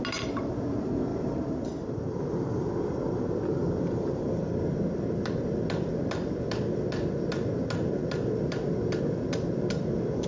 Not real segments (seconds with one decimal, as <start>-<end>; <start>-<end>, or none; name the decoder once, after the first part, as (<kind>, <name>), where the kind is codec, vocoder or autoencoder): 1.1-2.7 (vocoder, BigVGAN v2); 3.5-4.4